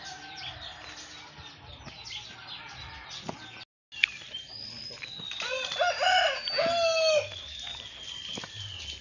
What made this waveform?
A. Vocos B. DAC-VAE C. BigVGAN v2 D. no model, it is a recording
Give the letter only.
D